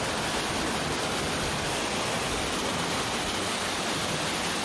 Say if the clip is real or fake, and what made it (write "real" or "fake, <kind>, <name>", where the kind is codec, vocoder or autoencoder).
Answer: real